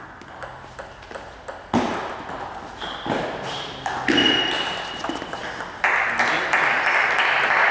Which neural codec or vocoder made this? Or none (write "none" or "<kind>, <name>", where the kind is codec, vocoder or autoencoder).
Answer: none